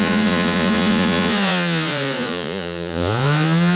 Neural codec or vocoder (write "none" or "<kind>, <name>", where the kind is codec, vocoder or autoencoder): vocoder, Vocos